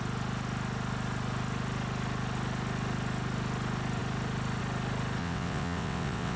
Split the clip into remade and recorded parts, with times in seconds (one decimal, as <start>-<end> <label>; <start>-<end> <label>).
0.0-5.2 recorded; 5.2-6.4 remade